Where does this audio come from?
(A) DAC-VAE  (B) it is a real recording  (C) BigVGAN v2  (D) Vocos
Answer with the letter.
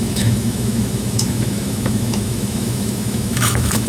A